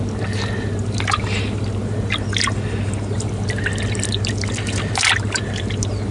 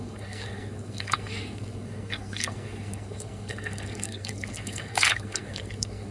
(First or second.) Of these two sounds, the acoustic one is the first